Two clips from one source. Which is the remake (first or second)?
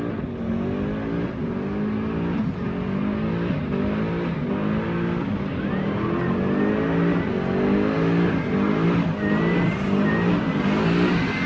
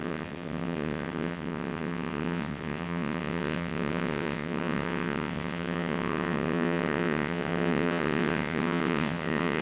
second